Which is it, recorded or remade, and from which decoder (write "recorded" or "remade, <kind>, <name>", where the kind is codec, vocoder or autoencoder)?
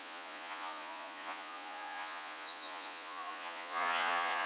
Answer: remade, vocoder, Vocos